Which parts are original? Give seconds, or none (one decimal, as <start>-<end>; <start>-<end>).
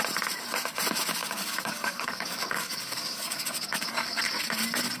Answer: 0.0-1.2; 4.2-5.0